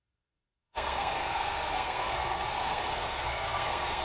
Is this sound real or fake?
fake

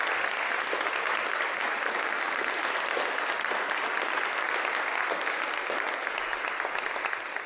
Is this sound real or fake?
real